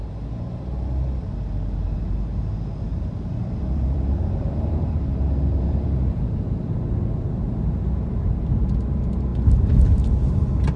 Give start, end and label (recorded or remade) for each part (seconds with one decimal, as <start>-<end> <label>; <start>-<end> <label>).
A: 0.0-2.9 recorded; 2.9-5.6 remade; 5.6-10.8 recorded